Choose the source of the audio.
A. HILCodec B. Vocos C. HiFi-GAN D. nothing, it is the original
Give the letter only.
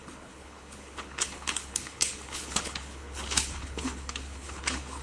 A